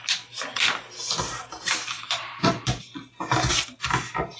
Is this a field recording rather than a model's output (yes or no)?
yes